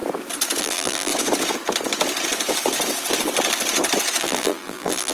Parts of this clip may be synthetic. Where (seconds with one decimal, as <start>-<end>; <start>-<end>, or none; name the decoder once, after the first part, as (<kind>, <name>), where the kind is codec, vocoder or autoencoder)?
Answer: 0.6-1.1 (vocoder, BigVGAN v2); 4.2-5.1